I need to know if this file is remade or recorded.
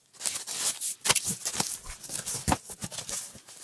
recorded